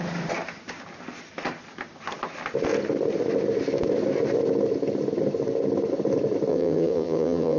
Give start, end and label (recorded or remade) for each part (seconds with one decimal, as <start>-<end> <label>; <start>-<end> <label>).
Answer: 0.0-6.5 recorded; 6.5-7.6 remade